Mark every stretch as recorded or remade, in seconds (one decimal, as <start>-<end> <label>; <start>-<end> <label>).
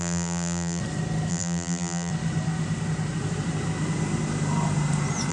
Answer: 0.0-0.8 remade; 0.8-1.3 recorded; 1.3-2.1 remade; 2.1-5.3 recorded